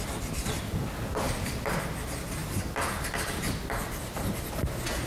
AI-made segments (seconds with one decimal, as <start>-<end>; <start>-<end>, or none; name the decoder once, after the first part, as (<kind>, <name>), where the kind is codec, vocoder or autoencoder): none